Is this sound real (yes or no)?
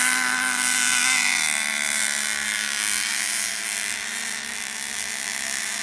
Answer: yes